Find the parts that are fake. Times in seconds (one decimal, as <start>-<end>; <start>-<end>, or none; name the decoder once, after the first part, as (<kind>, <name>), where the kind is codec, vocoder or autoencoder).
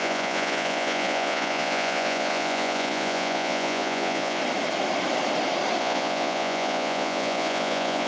0.0-4.4 (vocoder, Vocos); 5.8-8.1